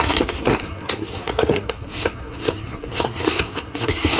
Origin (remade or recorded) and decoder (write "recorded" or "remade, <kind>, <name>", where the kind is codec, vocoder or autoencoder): remade, codec, SNAC